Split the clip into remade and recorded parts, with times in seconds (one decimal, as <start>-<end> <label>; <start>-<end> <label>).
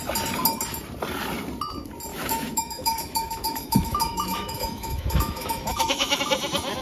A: 0.0-2.1 recorded; 2.1-6.2 remade; 6.2-6.8 recorded